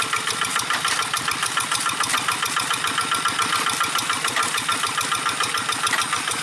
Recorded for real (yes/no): yes